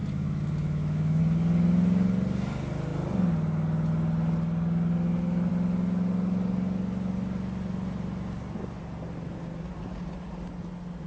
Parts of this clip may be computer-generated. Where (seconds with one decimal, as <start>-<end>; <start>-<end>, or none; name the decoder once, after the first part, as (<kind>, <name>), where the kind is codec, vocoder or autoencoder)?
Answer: 0.0-1.2 (autoencoder, DAC-VAE)